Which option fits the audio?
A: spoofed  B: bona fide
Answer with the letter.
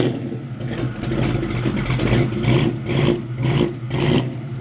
B